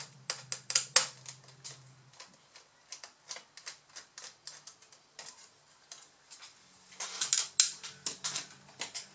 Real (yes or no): yes